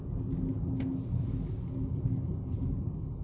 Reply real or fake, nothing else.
real